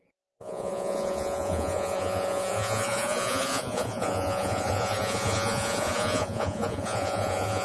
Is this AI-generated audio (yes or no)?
yes